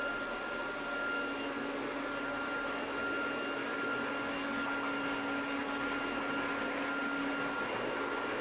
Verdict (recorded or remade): recorded